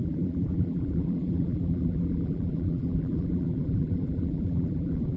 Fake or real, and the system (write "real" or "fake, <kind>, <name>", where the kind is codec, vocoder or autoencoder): fake, vocoder, BigVGAN v2